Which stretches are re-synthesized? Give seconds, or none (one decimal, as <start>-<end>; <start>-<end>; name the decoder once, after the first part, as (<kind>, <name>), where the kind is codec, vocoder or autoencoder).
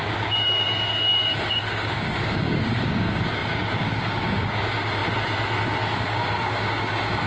0.0-5.0 (codec, DAC); 5.9-7.3